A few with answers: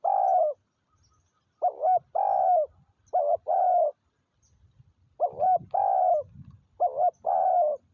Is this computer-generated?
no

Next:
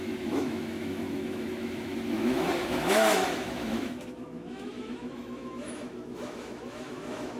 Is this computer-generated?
yes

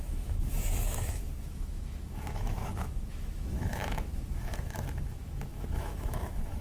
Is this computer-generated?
yes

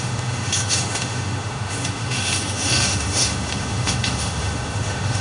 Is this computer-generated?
yes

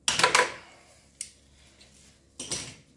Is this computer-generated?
no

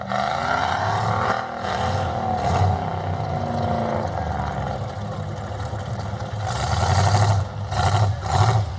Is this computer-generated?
no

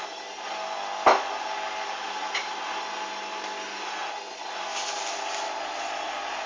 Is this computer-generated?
no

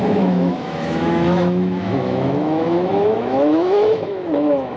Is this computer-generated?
yes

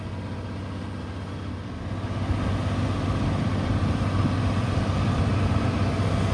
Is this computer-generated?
no